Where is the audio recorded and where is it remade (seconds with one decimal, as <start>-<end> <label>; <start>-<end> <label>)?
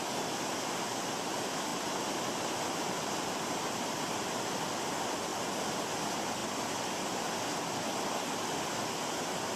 0.0-5.3 recorded; 5.3-5.8 remade; 5.8-9.6 recorded